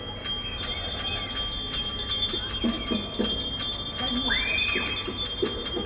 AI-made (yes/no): no